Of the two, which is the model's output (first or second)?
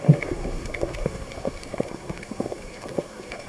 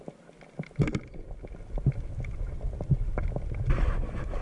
first